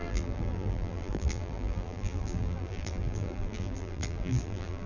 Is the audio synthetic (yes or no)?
yes